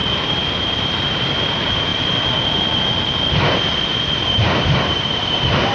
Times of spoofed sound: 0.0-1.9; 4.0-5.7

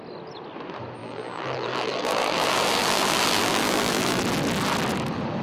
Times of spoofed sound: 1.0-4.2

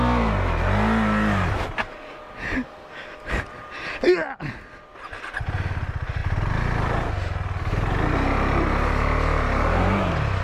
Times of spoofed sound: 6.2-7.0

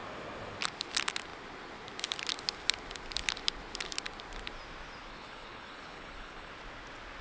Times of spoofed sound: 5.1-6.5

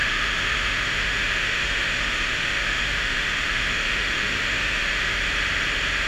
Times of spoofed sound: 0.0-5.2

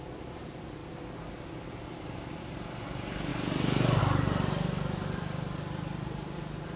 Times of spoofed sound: 0.0-0.8; 1.7-3.3; 4.0-6.8

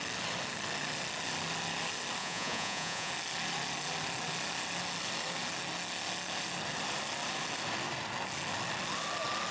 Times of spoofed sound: 2.2-3.1

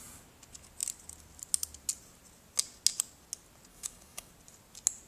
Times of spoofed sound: 3.7-4.3